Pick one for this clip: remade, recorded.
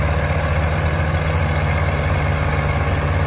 recorded